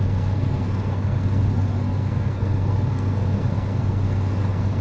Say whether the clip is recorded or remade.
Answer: remade